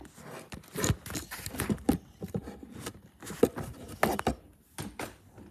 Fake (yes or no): no